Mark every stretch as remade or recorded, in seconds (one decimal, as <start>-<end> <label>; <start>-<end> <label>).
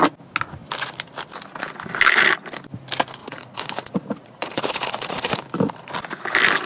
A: 0.0-3.2 recorded; 3.2-5.4 remade; 5.4-6.7 recorded